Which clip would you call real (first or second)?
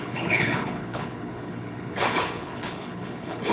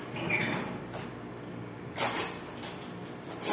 second